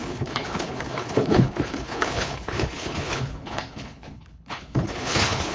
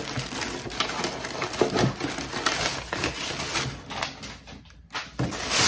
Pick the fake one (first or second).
first